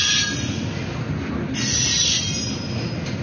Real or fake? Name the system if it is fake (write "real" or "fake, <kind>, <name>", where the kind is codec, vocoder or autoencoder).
real